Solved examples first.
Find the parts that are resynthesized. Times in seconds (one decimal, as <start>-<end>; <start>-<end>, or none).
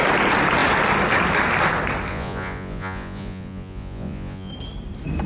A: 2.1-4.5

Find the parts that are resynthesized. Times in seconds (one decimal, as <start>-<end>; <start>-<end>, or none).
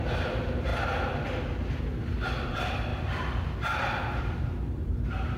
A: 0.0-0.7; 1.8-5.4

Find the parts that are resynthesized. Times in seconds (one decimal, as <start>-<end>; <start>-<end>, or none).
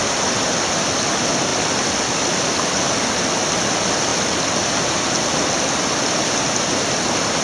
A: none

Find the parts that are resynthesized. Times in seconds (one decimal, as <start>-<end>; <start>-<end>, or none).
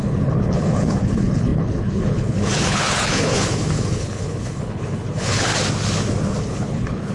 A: 0.0-5.5; 6.4-7.1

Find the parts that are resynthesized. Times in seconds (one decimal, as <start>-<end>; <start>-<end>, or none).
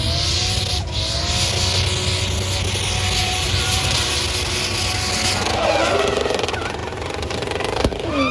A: 3.2-4.1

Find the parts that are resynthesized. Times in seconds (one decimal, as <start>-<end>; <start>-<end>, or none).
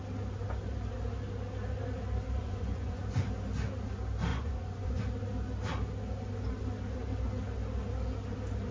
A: 2.4-3.0; 4.3-5.0